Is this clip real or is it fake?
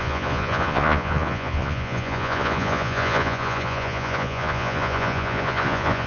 fake